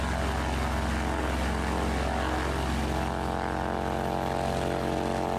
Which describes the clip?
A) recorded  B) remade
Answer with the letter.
A